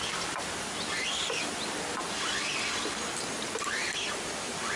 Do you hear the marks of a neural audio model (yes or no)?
no